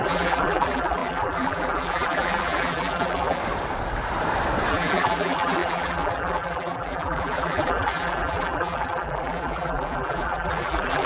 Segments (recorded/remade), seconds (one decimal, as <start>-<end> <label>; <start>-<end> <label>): 0.0-3.4 remade; 3.4-4.7 recorded; 4.7-11.1 remade